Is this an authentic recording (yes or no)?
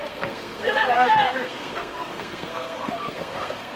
no